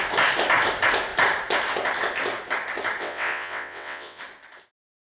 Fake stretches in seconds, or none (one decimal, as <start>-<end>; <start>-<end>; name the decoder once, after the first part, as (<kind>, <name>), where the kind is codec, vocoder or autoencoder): 3.0-4.2 (vocoder, WaveNeXt)